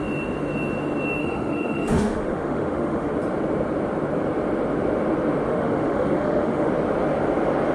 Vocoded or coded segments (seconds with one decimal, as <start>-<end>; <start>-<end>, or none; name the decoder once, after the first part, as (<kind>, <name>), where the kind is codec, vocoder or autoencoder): 1.2-3.1 (autoencoder, DAC-VAE); 5.5-6.7